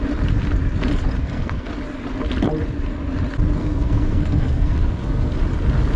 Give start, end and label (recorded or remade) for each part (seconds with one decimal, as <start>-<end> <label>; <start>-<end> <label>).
0.0-1.2 recorded; 1.2-1.7 remade; 1.7-3.6 recorded; 3.6-5.3 remade; 5.3-6.0 recorded